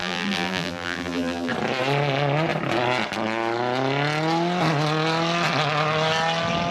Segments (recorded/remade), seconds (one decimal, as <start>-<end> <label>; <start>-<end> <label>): 0.0-1.5 remade; 1.5-6.7 recorded